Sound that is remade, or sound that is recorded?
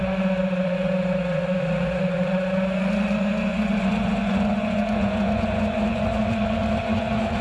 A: remade